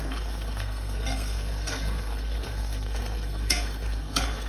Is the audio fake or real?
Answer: fake